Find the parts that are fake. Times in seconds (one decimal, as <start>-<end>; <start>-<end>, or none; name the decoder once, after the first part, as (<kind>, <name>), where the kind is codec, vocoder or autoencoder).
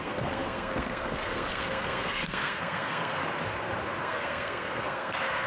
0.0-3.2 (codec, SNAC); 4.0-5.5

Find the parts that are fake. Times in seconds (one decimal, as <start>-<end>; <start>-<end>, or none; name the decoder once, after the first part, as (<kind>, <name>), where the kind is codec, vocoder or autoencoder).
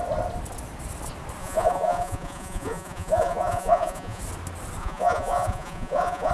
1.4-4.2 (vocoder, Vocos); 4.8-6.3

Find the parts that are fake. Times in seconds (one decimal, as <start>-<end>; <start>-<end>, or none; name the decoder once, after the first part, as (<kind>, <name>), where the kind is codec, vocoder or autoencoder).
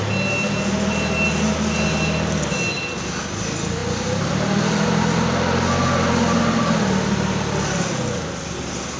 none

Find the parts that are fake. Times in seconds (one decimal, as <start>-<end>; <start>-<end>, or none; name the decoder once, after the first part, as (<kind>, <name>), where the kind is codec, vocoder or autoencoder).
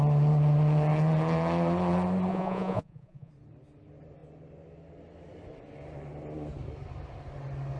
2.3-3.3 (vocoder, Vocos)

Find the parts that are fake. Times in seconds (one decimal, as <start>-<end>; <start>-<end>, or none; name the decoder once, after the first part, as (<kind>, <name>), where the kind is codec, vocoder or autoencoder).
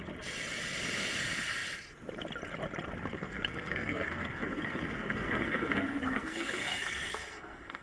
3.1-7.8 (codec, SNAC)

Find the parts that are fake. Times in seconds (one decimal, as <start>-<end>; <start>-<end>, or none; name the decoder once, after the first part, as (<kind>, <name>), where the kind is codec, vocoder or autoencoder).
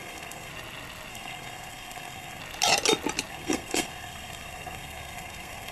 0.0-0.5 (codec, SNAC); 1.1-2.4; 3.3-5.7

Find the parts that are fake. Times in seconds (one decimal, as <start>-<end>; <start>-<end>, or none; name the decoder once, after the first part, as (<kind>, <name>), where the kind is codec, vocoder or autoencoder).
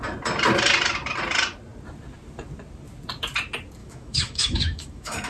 3.8-5.3 (autoencoder, DAC-VAE)